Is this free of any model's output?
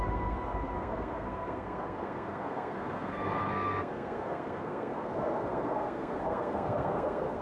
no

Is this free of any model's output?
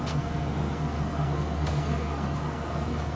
no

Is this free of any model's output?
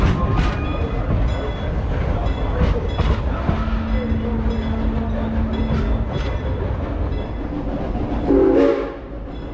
yes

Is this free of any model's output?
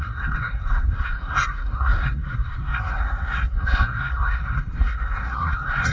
no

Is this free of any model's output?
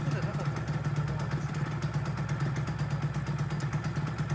yes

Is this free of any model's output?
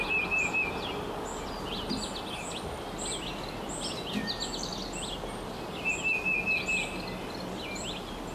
yes